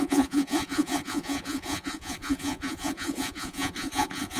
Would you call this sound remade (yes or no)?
yes